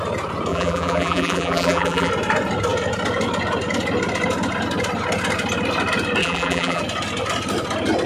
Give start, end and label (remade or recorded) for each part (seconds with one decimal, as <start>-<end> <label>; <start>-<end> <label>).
0.0-0.5 recorded; 0.5-2.1 remade; 2.1-6.2 recorded; 6.2-6.8 remade; 6.8-8.1 recorded